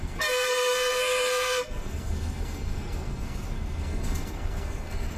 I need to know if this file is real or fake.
fake